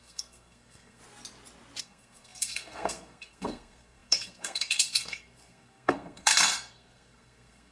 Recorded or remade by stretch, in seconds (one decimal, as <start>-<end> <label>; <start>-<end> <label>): 0.0-1.0 remade; 1.0-1.8 recorded; 1.8-7.7 remade